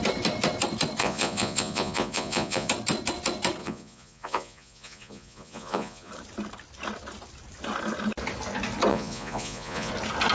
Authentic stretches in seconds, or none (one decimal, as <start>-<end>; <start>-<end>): 0.0-1.0; 2.7-3.6; 6.1-8.9; 9.9-10.3